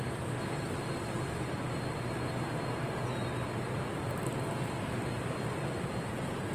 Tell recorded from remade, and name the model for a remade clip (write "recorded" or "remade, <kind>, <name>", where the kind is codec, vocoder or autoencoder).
recorded